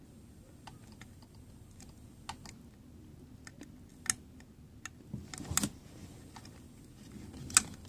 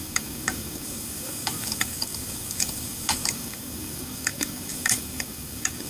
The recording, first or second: first